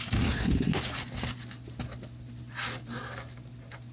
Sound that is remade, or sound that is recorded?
recorded